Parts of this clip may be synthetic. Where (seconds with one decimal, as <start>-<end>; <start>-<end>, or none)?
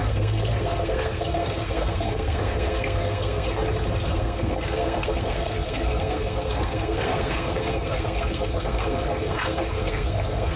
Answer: 0.0-3.6; 4.1-10.6